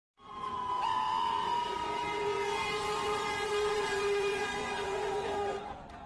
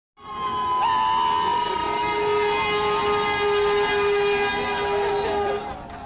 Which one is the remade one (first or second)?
first